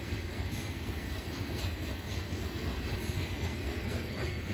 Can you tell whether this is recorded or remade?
remade